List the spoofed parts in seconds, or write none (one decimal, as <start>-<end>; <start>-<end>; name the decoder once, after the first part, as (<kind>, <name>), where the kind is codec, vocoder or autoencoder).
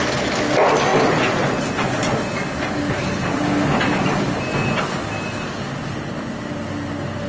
none